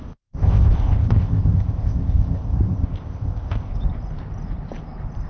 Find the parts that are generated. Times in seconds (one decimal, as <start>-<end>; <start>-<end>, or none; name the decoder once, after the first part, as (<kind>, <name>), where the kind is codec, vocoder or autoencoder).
0.0-3.7 (codec, ZipCodec)